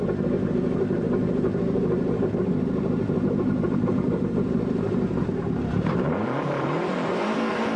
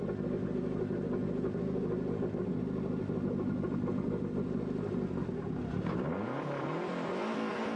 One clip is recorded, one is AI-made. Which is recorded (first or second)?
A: second